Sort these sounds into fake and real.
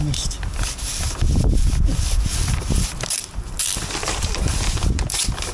real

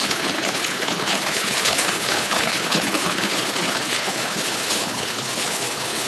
fake